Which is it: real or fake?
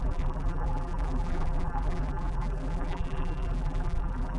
fake